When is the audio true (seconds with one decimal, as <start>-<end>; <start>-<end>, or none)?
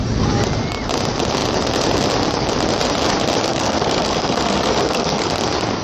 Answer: 0.0-3.5; 5.3-5.8